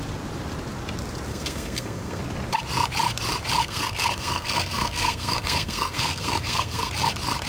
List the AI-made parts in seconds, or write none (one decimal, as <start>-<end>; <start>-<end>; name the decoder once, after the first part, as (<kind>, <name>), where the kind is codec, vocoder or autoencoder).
1.3-2.2 (codec, SNAC); 3.6-6.9